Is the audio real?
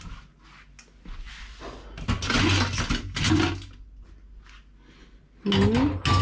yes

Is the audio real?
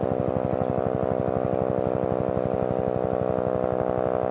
yes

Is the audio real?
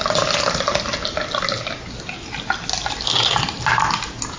yes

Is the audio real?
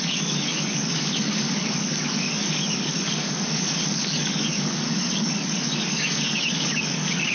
no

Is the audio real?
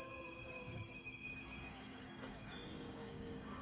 no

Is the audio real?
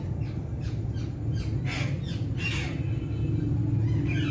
yes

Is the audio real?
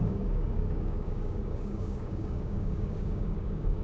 no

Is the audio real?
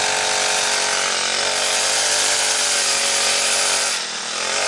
yes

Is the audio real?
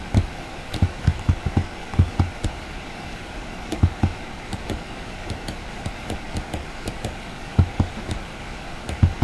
no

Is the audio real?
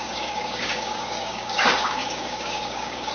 no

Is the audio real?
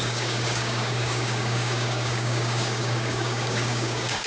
no